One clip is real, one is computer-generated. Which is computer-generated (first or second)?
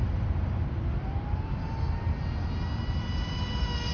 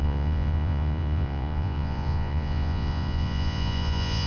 second